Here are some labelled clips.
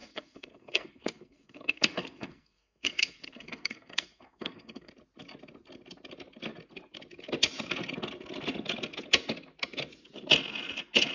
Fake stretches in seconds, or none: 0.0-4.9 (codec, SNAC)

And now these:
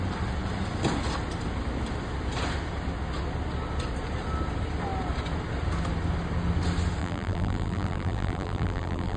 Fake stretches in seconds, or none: 7.0-9.2 (vocoder, BigVGAN v2)

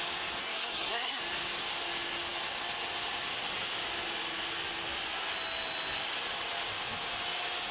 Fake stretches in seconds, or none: 0.4-1.2 (codec, SNAC)